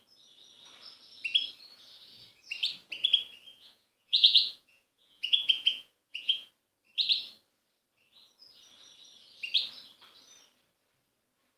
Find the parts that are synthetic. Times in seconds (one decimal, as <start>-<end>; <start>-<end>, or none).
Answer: 3.5-6.5